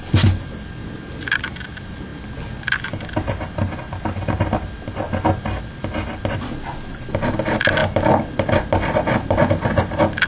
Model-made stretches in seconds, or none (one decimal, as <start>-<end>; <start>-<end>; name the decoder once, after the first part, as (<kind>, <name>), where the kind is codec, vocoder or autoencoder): none